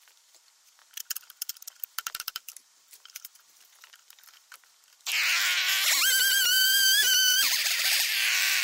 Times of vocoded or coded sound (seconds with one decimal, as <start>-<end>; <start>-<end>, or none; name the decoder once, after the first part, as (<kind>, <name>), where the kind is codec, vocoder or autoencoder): 0.0-0.8 (vocoder, BigVGAN v2); 2.2-3.3; 5.9-8.6